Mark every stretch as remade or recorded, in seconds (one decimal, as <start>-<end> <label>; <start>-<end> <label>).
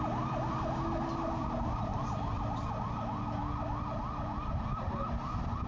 0.0-5.7 recorded